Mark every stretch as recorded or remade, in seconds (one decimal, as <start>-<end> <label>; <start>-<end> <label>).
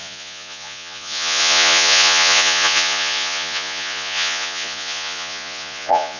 0.0-6.2 remade